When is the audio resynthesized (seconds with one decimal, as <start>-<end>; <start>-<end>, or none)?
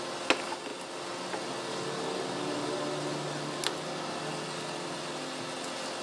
none